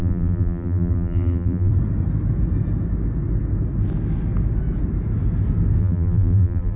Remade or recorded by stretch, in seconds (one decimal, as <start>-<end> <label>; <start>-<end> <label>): 0.0-1.7 remade; 1.7-5.8 recorded; 5.8-6.8 remade